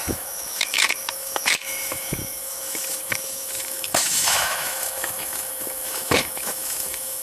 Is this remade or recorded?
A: remade